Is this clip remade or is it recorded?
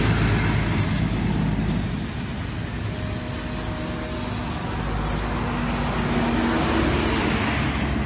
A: recorded